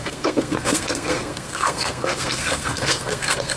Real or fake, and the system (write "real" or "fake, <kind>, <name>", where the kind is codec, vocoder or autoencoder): fake, codec, SNAC